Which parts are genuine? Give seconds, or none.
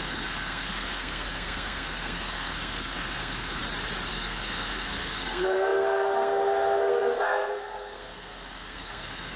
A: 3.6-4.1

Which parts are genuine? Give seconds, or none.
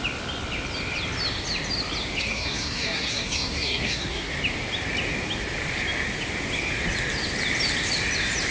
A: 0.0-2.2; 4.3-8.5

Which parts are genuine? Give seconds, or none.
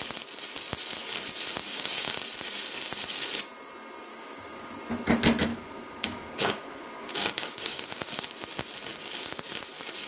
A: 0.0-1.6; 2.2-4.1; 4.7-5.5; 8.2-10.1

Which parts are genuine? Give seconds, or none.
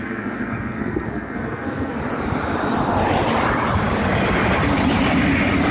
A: 2.0-5.7